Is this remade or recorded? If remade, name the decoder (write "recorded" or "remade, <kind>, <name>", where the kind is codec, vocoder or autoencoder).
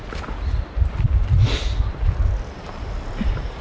recorded